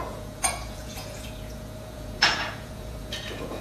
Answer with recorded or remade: remade